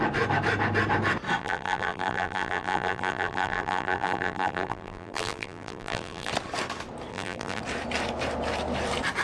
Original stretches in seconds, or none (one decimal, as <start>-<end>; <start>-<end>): 0.0-1.4; 6.3-7.1; 7.6-9.2